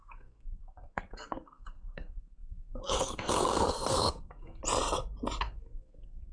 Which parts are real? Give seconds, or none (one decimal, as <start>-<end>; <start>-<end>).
4.6-5.4

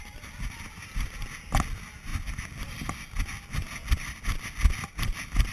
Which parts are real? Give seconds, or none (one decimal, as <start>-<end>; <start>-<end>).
0.0-5.5

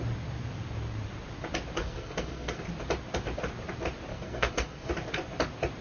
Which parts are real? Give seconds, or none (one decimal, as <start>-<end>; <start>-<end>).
0.0-1.8; 2.6-4.1; 4.9-5.8

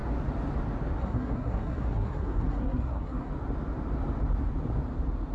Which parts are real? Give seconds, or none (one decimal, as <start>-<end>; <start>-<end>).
0.0-1.0; 3.3-5.3

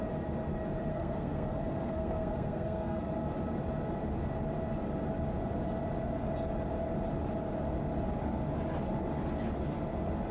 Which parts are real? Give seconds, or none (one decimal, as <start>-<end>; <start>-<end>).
0.0-0.9; 3.0-10.3

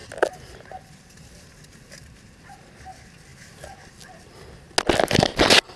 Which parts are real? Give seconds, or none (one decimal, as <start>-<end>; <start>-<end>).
0.0-5.8